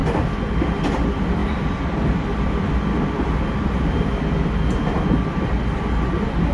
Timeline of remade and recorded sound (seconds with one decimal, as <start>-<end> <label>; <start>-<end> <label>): 0.0-1.4 recorded; 1.4-5.3 remade; 5.3-6.5 recorded